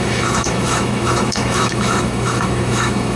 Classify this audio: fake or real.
fake